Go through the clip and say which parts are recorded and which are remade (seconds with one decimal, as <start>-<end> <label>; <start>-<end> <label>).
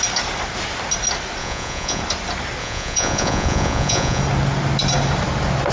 0.0-1.4 recorded; 1.4-2.0 remade; 2.0-2.6 recorded; 2.6-4.2 remade; 4.2-5.7 recorded